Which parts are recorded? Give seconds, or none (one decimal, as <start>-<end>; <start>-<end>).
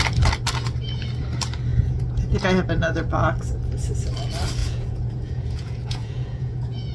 0.0-1.7; 2.4-4.6